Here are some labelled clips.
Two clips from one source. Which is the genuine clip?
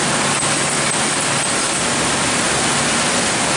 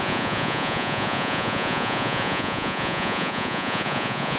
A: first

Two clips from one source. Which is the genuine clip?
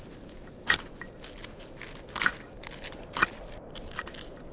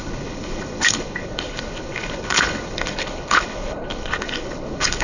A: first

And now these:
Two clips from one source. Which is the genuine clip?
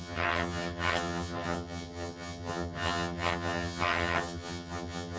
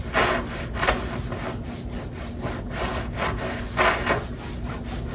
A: second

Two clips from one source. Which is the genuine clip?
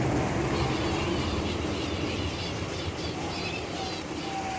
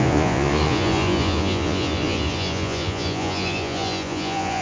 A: first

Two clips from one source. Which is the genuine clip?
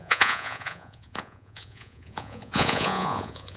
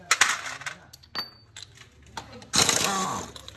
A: second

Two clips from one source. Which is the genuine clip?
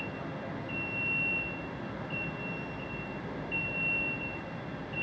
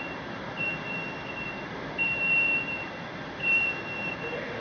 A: first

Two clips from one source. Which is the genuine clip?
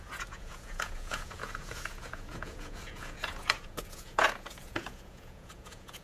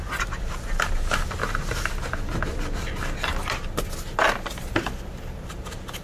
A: second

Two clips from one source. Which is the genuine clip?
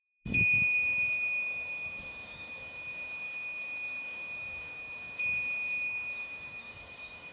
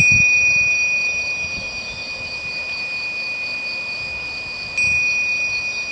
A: second